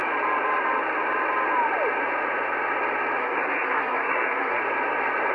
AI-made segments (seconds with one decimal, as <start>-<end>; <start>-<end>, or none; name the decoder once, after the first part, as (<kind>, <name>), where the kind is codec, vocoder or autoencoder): 3.2-4.6 (codec, SNAC)